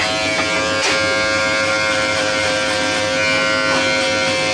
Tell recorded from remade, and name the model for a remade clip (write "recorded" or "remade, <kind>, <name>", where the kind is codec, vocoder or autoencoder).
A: recorded